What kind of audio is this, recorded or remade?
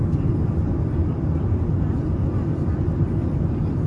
recorded